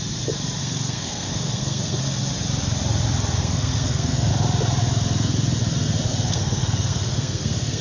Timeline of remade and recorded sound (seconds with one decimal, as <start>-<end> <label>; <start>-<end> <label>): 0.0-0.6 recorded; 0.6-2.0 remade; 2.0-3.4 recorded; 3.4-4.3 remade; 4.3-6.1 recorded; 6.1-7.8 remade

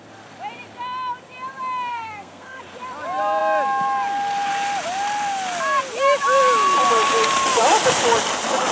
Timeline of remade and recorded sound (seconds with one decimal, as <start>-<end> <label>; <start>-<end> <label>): 0.0-1.9 recorded; 1.9-2.6 remade; 2.6-8.7 recorded

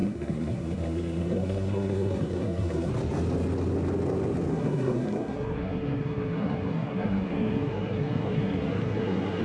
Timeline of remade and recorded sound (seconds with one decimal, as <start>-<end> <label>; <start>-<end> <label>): 0.0-2.9 remade; 2.9-4.5 recorded; 4.5-9.4 remade